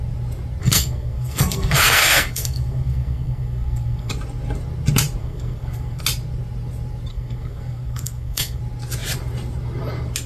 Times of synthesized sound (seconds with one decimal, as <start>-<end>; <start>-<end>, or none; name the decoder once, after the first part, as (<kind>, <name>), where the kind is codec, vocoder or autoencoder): 0.6-4.1 (codec, SNAC); 5.2-6.0; 7.1-8.6